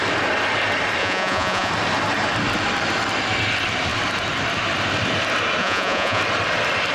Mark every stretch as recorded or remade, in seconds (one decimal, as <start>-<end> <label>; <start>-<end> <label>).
0.0-1.0 recorded; 1.0-1.7 remade; 1.7-5.6 recorded; 5.6-6.2 remade; 6.2-6.9 recorded